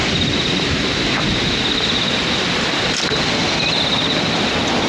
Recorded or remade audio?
recorded